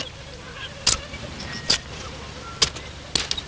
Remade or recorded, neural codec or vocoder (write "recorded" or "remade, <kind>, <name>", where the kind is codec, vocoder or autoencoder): recorded